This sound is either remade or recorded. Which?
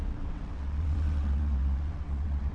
remade